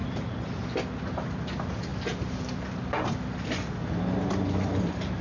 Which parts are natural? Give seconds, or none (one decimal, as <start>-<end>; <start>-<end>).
0.0-5.2